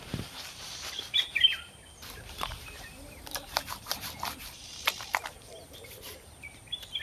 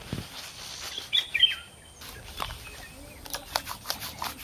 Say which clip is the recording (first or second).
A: second